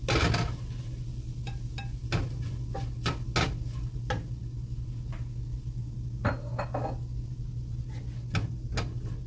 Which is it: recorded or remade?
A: recorded